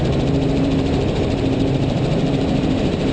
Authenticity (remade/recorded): remade